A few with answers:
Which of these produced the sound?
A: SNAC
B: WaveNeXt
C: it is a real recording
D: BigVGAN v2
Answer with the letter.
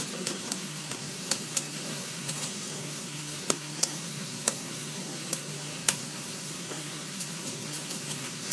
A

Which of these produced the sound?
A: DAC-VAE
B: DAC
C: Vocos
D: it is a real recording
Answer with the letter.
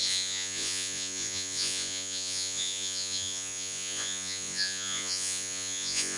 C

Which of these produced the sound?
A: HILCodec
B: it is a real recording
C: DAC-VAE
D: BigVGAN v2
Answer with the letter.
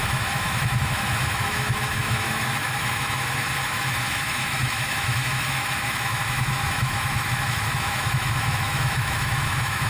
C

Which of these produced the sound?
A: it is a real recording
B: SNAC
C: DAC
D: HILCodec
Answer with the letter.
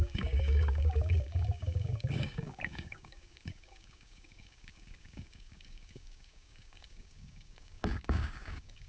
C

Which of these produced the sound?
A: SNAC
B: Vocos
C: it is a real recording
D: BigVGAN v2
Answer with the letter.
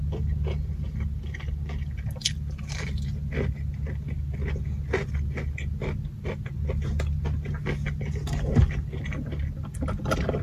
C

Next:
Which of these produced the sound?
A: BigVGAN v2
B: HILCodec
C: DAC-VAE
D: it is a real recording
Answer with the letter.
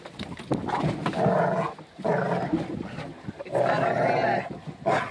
D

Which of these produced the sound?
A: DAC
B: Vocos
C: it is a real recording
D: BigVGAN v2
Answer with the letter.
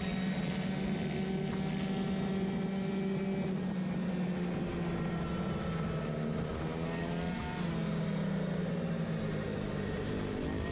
C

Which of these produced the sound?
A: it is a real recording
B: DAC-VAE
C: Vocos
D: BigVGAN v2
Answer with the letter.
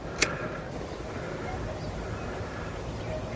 A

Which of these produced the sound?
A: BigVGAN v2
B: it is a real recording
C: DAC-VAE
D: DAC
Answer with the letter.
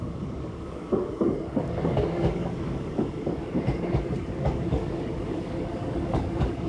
D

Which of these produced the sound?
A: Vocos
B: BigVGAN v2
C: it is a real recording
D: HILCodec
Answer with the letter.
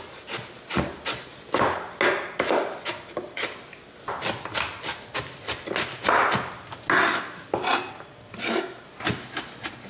C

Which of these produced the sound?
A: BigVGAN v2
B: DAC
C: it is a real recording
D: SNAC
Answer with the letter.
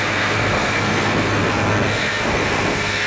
D